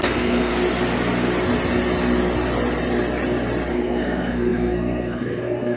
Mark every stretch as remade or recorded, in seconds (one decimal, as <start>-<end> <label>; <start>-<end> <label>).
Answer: 0.0-0.5 remade; 0.5-3.7 recorded; 3.7-5.8 remade